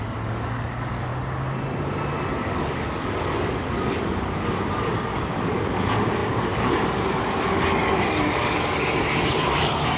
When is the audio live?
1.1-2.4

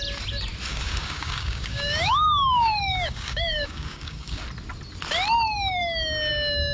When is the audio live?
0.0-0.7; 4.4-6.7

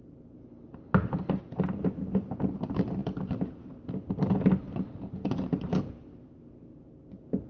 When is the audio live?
0.0-7.5